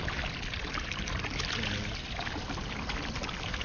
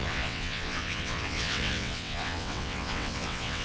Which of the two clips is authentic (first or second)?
first